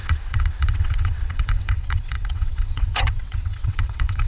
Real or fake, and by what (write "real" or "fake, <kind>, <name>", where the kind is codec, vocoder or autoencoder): fake, vocoder, WaveNeXt